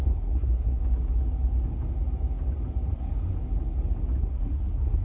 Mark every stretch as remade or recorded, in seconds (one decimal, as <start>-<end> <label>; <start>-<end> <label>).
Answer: 0.0-0.8 remade; 0.8-2.9 recorded; 2.9-3.3 remade; 3.3-4.2 recorded; 4.2-5.0 remade

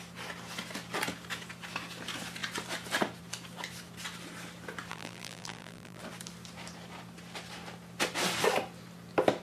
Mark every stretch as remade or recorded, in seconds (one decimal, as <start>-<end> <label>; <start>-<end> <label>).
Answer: 0.0-4.9 recorded; 4.9-6.0 remade; 6.0-9.4 recorded

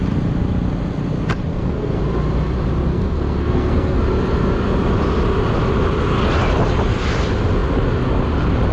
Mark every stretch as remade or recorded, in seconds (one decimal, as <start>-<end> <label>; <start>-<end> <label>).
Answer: 0.0-1.5 recorded; 1.5-2.0 remade; 2.0-2.9 recorded; 2.9-4.0 remade; 4.0-8.7 recorded